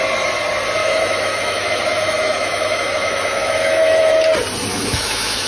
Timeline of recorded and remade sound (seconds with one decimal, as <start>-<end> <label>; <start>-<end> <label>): 0.0-0.8 recorded; 0.8-4.1 remade; 4.1-4.7 recorded; 4.7-5.5 remade